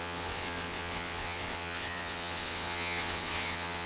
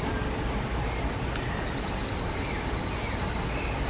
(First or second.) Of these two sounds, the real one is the second